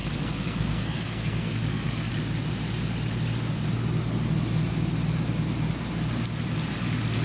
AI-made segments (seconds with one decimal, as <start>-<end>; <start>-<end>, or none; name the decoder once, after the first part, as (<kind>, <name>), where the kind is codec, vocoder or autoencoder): 0.0-2.1 (codec, SNAC)